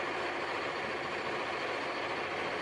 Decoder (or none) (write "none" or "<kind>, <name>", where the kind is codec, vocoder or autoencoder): none